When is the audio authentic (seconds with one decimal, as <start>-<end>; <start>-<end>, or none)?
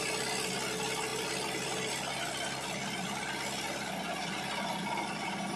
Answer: 0.0-5.6